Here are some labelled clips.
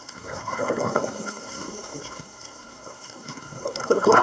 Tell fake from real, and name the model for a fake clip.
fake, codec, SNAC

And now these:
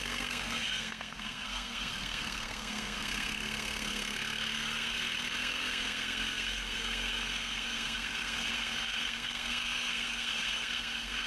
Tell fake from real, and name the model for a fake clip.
fake, codec, SNAC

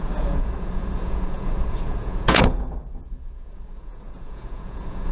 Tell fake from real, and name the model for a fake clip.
fake, vocoder, Vocos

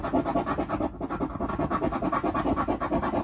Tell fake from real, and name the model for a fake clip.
real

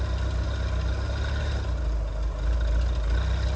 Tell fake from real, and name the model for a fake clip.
real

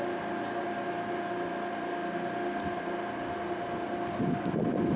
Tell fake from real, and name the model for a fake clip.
real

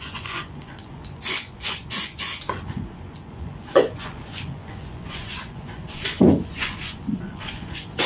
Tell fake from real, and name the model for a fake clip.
fake, vocoder, Vocos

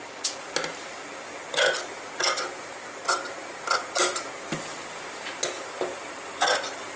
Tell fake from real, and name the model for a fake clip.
real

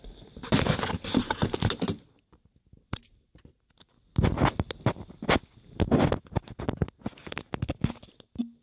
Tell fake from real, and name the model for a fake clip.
real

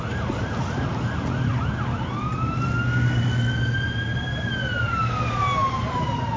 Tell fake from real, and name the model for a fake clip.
real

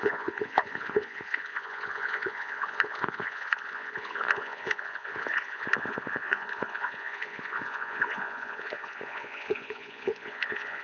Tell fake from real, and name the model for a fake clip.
fake, vocoder, Vocos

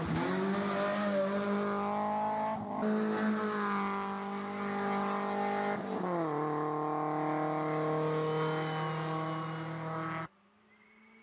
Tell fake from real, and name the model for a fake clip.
real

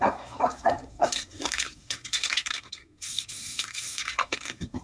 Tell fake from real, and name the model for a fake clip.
fake, codec, SNAC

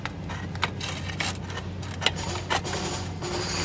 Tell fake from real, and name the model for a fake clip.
real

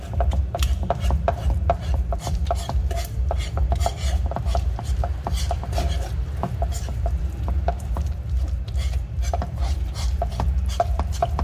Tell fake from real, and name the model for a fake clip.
fake, vocoder, BigVGAN v2